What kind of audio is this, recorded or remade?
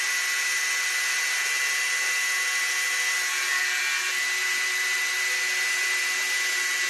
recorded